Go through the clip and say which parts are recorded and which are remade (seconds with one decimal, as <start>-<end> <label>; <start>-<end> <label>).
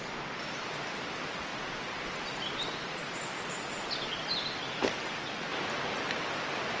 0.0-6.8 recorded